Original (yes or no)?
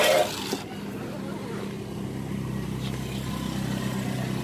yes